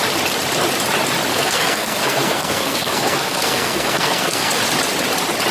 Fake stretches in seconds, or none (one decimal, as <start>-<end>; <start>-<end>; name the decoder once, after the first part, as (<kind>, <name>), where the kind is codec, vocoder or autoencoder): 1.3-4.6 (codec, SNAC)